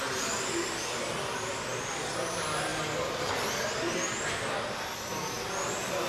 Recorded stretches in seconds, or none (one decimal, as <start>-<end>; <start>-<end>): 0.0-6.1